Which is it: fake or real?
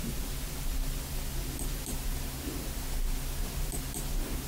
real